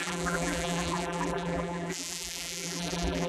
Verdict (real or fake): fake